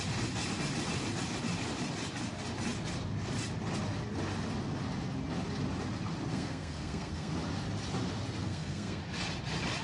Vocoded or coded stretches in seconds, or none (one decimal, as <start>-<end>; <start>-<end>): 6.3-7.3; 8.4-9.0